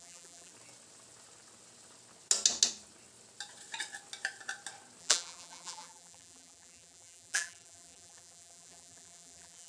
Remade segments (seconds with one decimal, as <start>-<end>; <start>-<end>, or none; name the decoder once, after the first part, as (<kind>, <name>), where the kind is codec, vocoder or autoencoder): 0.0-0.5 (vocoder, BigVGAN v2); 5.0-9.7